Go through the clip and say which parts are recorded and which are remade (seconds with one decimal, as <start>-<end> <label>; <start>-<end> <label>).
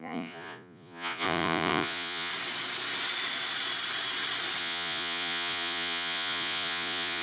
0.0-2.3 remade; 2.3-4.6 recorded; 4.6-7.2 remade